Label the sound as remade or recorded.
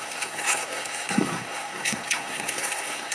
remade